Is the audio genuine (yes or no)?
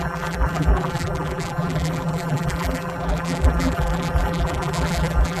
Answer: no